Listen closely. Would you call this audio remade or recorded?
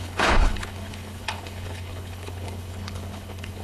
remade